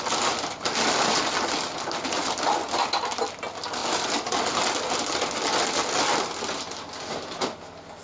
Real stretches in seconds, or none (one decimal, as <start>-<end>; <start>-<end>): 0.0-8.0